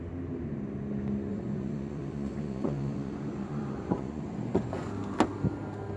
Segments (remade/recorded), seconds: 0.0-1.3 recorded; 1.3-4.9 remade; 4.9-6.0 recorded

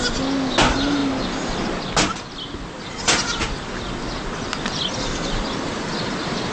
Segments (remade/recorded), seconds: 0.0-6.5 recorded